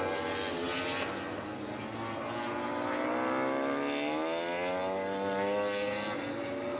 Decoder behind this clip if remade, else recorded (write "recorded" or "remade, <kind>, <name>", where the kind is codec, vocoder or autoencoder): recorded